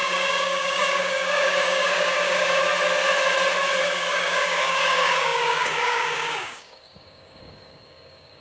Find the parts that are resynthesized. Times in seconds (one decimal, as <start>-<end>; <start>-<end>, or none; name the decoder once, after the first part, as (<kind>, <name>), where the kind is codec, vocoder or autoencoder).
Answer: 0.0-2.6 (codec, DAC); 3.8-8.4